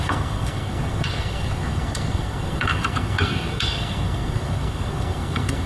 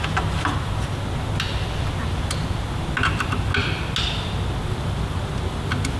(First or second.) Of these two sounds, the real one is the second